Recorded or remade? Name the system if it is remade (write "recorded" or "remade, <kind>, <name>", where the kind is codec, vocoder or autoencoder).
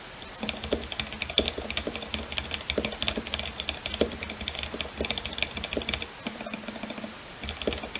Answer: recorded